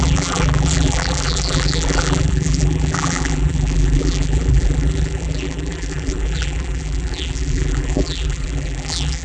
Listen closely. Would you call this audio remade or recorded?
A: remade